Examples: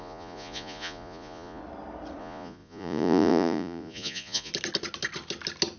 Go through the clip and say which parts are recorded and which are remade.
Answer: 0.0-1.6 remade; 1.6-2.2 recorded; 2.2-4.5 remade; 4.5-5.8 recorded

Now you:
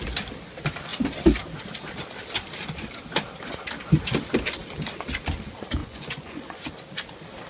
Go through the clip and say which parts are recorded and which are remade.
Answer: 0.0-5.8 recorded; 5.8-6.7 remade; 6.7-7.5 recorded

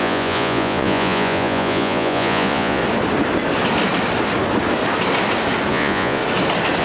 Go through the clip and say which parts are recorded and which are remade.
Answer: 0.0-2.8 remade; 2.8-5.7 recorded; 5.7-6.2 remade; 6.2-6.8 recorded

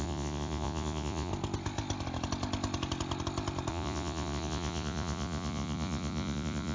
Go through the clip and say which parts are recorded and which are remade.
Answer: 0.0-1.3 remade; 1.3-3.7 recorded; 3.7-6.7 remade

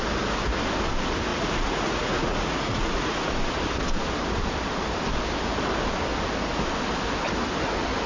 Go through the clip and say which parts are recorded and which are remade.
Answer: 0.0-1.3 recorded; 1.3-3.3 remade; 3.3-8.1 recorded

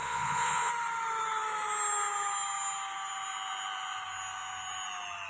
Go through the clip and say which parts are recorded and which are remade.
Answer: 0.0-0.7 remade; 0.7-5.3 recorded